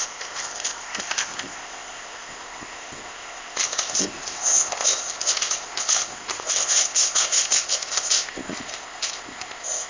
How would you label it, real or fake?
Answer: fake